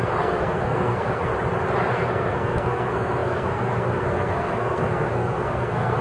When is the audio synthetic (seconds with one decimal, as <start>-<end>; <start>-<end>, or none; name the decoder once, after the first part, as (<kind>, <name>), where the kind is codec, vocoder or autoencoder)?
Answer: 0.0-1.3 (codec, SNAC); 1.9-6.0